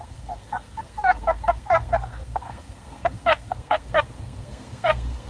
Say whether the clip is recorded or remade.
remade